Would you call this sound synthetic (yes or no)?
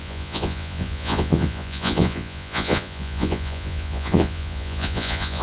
yes